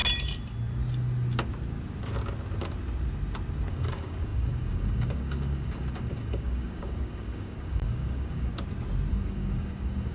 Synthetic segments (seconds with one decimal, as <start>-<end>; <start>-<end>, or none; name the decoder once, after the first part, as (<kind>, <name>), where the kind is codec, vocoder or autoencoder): 3.7-8.5 (codec, DAC); 9.1-10.1